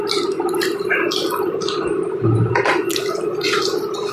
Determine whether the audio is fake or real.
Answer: real